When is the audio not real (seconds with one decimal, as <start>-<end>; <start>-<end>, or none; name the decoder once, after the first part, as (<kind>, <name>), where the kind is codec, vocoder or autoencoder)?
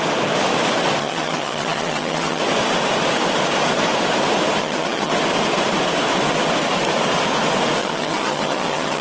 1.0-2.4 (vocoder, HiFi-GAN); 4.6-5.1; 7.8-9.0